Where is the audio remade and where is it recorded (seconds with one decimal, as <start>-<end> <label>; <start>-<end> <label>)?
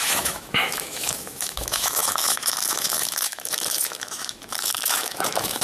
0.0-5.6 remade